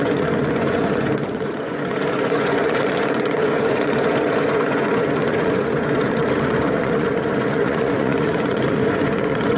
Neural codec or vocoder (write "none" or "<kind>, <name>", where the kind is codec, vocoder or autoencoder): vocoder, Vocos